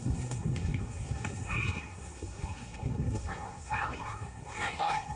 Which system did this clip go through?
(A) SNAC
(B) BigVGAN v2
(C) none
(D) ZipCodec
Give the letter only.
A